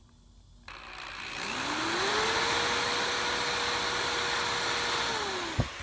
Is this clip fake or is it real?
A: real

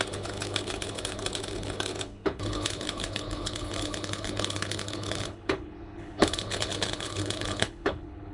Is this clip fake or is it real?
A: fake